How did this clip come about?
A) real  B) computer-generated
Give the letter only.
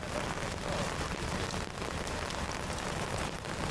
A